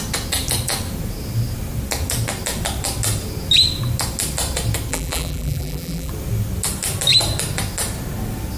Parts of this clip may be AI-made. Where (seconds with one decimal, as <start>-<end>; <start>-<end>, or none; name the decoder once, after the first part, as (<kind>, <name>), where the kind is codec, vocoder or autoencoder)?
4.9-6.1 (vocoder, BigVGAN v2)